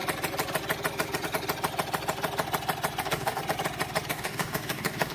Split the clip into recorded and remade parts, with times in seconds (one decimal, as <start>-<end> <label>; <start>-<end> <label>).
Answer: 0.0-3.0 recorded; 3.0-3.4 remade; 3.4-4.1 recorded; 4.1-5.1 remade